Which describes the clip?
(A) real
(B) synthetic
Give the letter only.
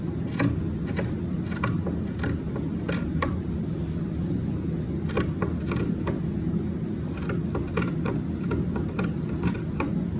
A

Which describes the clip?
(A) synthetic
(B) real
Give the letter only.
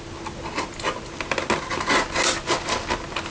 B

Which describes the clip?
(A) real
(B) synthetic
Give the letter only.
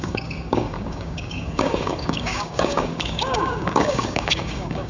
B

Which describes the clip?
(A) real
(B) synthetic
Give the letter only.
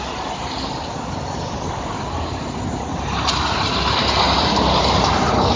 A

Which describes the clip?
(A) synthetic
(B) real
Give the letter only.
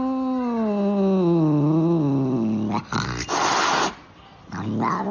B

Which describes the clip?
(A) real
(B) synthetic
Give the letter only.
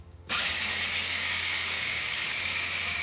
B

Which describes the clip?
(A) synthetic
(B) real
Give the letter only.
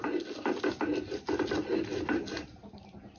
B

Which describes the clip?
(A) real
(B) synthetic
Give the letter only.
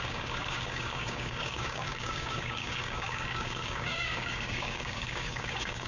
B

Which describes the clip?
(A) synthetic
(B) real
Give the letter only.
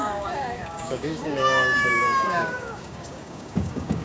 A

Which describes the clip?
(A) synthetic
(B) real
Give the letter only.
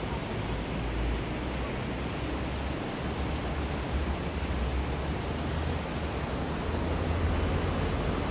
B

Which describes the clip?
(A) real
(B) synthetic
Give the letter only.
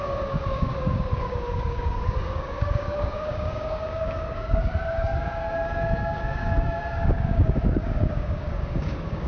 B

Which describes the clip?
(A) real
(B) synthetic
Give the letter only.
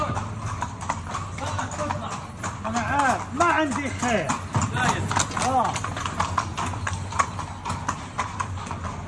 A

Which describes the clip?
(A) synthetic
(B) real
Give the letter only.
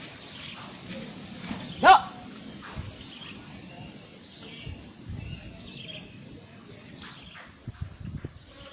B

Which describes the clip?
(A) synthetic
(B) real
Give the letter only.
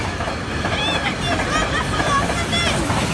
B